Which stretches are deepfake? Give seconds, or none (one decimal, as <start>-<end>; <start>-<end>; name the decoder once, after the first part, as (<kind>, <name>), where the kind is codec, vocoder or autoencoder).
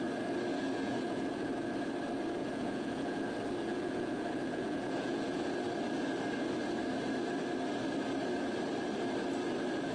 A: 0.5-1.5 (vocoder, Vocos); 2.4-3.2; 3.6-5.5